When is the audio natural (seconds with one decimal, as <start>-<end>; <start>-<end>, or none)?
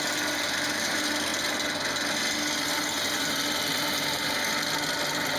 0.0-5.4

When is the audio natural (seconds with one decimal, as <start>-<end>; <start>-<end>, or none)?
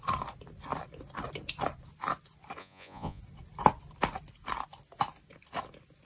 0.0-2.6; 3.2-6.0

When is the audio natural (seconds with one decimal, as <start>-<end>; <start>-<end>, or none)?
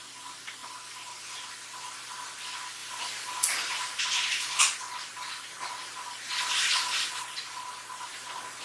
0.0-2.8; 4.6-5.8